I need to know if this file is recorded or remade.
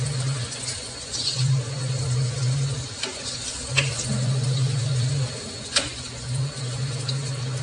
remade